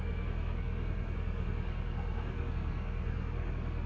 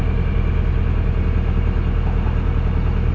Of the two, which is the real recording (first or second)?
second